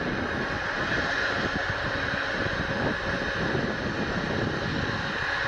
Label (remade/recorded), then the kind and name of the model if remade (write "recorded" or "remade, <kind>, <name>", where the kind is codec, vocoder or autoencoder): recorded